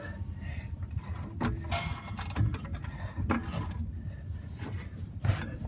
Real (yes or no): yes